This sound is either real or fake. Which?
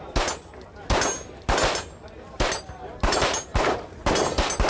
real